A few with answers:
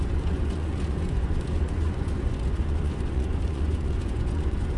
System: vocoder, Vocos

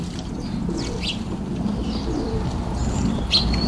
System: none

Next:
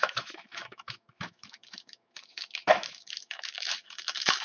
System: autoencoder, DAC-VAE